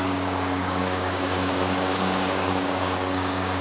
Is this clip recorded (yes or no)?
no